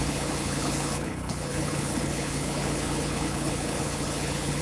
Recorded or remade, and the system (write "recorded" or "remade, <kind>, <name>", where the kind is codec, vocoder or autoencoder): remade, codec, HILCodec